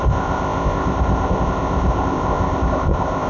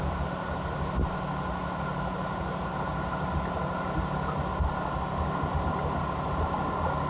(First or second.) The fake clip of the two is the first